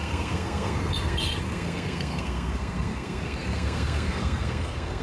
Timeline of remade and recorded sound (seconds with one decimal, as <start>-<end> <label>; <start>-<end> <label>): 0.0-5.0 remade